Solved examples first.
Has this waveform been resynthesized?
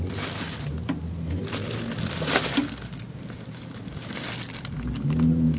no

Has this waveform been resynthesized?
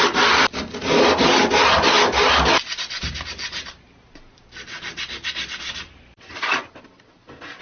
no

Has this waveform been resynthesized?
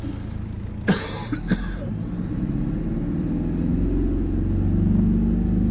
no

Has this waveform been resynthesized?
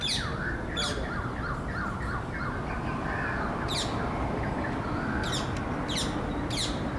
no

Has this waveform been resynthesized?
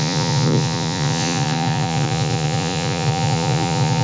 yes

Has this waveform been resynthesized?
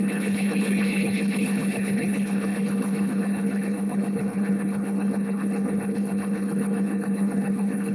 yes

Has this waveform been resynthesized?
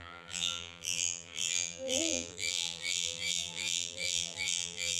yes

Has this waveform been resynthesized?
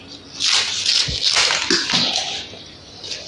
no